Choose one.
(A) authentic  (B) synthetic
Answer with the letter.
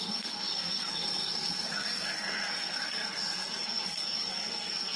B